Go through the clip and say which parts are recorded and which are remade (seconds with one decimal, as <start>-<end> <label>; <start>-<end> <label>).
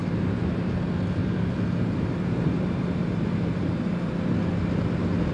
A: 0.0-0.6 remade; 0.6-1.2 recorded; 1.2-4.1 remade; 4.1-5.3 recorded